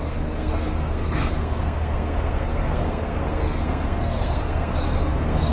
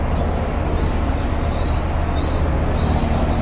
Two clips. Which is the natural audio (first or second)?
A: second